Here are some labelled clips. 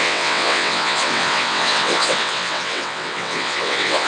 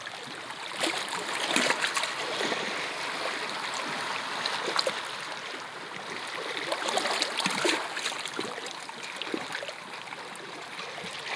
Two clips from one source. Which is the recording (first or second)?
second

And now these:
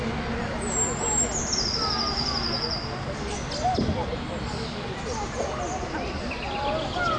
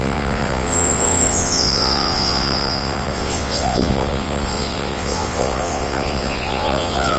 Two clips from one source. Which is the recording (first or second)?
first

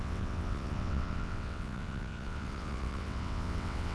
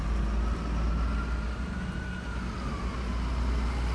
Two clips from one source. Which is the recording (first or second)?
second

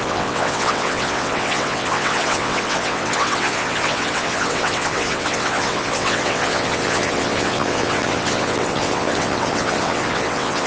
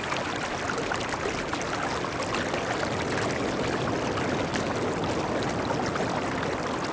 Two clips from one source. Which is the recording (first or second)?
second